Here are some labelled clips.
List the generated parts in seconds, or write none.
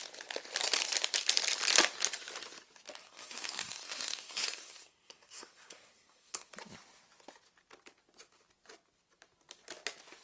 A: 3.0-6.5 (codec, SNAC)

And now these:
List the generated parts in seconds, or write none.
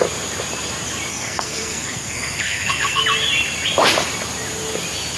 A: 1.1-3.0 (codec, SNAC)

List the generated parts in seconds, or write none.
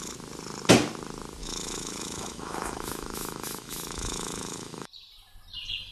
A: 1.4-4.9 (autoencoder, DAC-VAE)